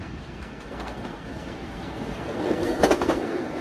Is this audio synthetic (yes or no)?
yes